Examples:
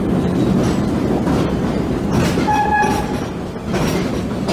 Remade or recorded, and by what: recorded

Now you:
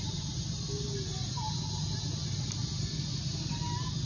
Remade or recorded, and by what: recorded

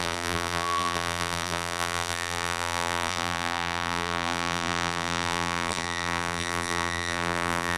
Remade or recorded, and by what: remade, vocoder, BigVGAN v2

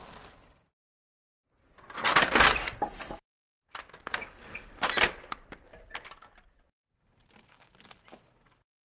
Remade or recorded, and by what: recorded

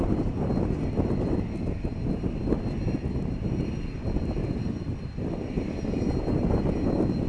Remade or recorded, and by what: recorded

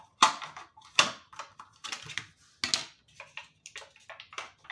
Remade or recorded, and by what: recorded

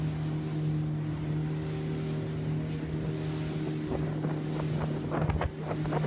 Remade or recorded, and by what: recorded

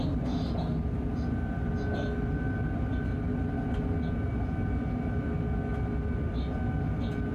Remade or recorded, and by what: recorded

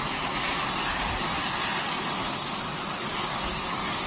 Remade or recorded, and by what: recorded